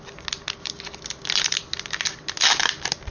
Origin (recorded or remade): recorded